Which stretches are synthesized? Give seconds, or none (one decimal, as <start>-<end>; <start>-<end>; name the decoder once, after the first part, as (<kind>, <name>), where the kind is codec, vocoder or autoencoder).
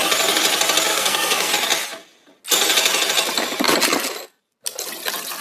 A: 0.9-1.5 (codec, SNAC)